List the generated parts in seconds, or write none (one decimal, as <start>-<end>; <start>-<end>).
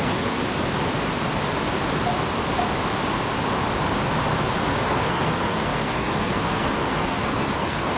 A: 0.0-0.4; 4.9-8.0